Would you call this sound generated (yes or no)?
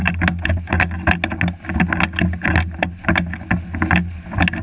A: no